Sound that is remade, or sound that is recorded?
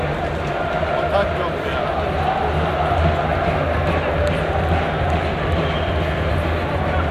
recorded